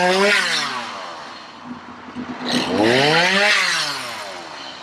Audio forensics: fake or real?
real